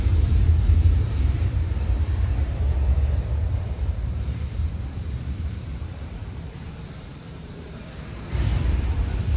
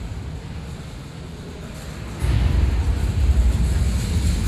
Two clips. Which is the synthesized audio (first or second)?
first